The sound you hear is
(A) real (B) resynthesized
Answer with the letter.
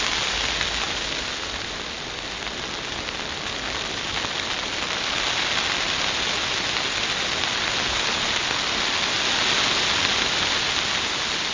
A